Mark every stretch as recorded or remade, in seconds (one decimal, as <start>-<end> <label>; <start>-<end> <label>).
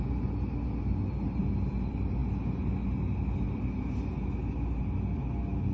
0.0-5.7 recorded